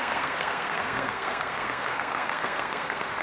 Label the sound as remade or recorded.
remade